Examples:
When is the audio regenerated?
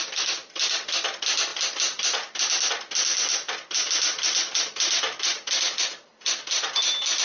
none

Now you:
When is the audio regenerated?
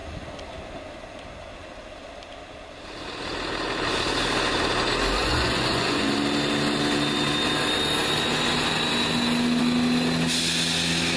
5.2-6.1 (vocoder, Vocos)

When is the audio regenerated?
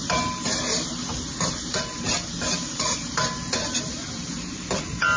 none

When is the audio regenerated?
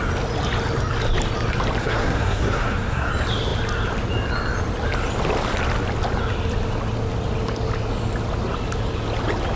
1.8-3.1 (codec, SNAC)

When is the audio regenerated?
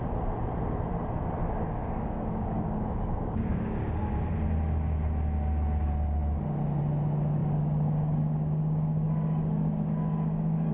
1.8-4.1 (codec, DAC); 7.4-10.7